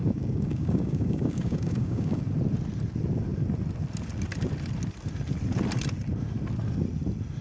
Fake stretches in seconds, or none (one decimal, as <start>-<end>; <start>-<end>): 0.0-2.2